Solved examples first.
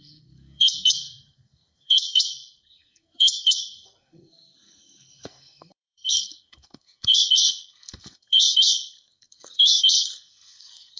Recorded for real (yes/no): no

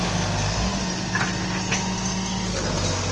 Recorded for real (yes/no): yes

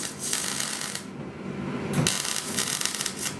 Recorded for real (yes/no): yes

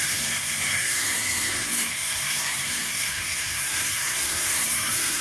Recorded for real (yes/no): no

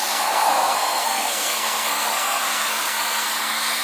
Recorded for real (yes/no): no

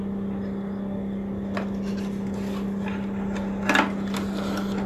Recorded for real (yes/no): yes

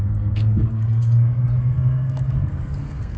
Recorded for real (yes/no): no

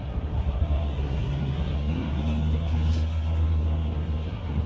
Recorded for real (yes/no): no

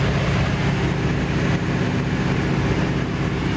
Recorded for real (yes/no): yes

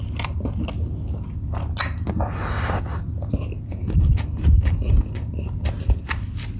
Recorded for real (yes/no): yes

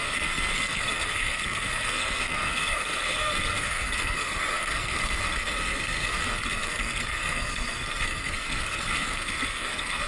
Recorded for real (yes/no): no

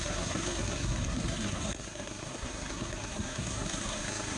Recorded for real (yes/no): no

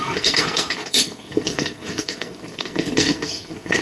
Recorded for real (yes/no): no